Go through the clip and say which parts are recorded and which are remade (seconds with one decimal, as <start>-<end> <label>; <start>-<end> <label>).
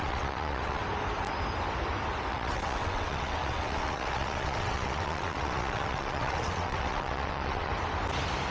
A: 0.0-0.8 remade; 0.8-2.3 recorded; 2.3-7.7 remade; 7.7-8.5 recorded